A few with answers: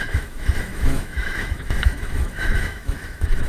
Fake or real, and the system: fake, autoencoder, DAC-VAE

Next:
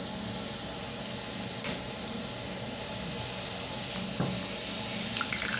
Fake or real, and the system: real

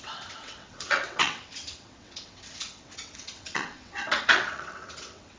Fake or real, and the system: fake, vocoder, WaveNeXt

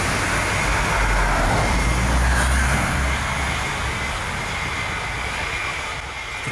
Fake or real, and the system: real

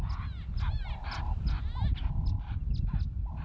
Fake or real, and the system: real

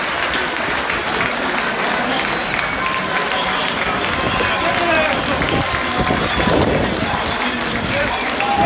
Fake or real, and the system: real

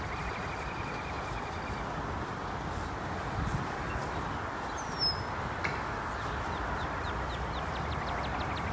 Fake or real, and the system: real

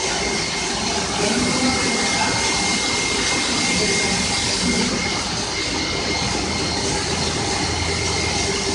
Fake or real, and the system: real